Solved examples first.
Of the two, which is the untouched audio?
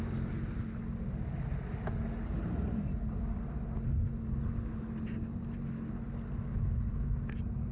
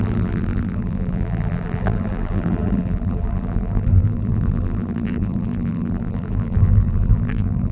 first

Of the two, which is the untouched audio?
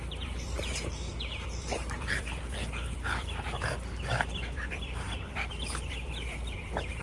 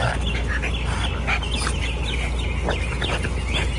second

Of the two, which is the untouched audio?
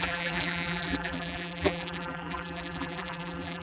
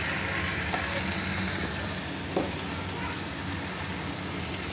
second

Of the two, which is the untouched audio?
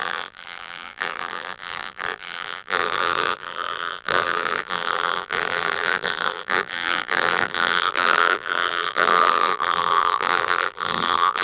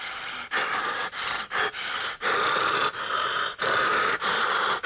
second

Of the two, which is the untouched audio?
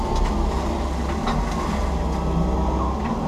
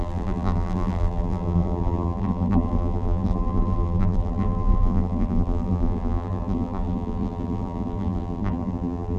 first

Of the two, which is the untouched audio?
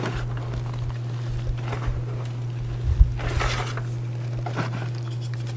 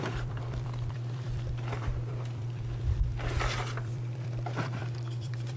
first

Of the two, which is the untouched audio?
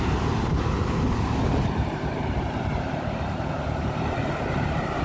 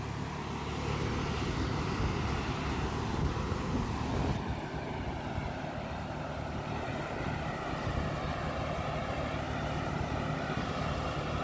second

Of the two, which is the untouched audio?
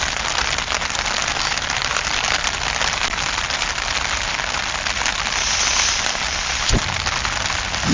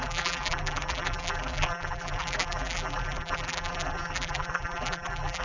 first